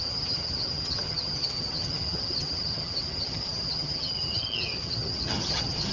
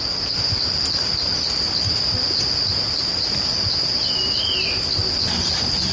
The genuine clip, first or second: second